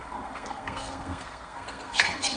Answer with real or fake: fake